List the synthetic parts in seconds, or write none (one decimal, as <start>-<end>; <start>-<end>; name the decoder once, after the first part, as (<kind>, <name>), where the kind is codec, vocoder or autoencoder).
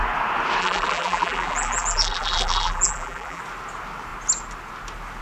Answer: 0.6-3.4 (vocoder, BigVGAN v2)